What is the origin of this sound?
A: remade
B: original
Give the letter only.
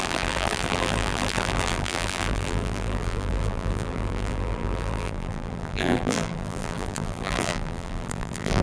A